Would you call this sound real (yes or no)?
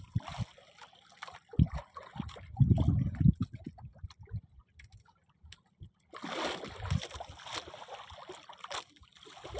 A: yes